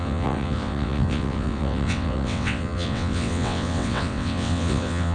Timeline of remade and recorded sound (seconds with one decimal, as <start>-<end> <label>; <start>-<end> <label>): 0.0-5.1 remade